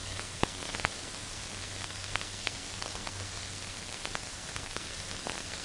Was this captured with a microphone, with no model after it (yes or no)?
no